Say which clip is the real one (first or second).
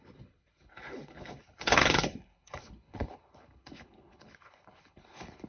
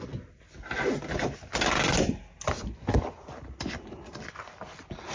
second